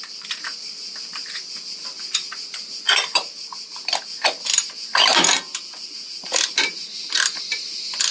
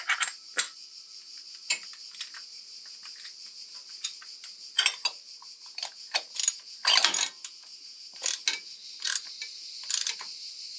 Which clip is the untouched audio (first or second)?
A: second